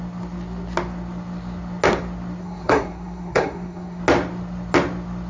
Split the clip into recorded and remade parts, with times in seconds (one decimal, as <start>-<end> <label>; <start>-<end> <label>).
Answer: 0.0-2.4 recorded; 2.4-4.0 remade; 4.0-5.3 recorded